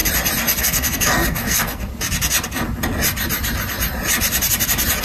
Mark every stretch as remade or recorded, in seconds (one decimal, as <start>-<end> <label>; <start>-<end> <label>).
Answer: 0.0-0.6 recorded; 0.6-1.9 remade; 1.9-5.0 recorded